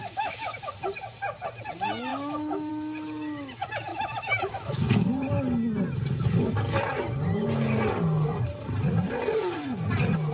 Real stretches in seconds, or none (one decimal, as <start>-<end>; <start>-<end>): 0.7-2.1; 2.7-3.9; 5.1-10.3